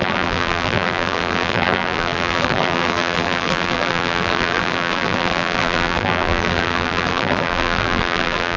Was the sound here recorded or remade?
remade